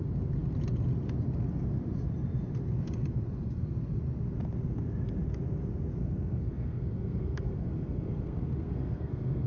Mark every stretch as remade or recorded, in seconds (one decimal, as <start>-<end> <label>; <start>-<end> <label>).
0.0-6.0 recorded; 6.0-9.5 remade